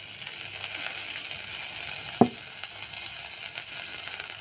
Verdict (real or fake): real